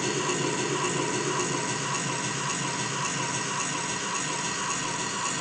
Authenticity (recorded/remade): recorded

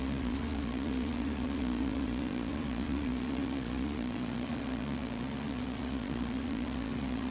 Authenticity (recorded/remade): remade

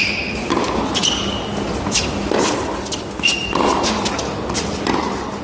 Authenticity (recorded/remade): recorded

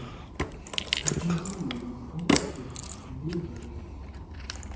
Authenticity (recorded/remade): recorded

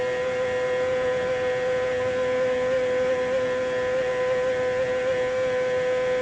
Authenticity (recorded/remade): recorded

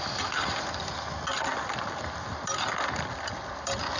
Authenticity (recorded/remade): recorded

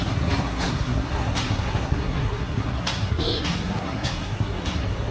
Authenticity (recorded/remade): remade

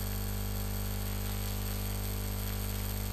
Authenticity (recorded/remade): recorded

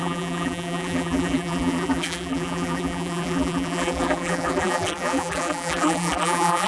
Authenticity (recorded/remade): remade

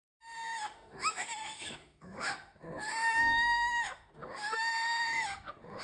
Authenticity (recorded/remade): remade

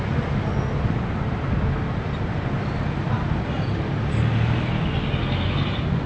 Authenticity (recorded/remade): recorded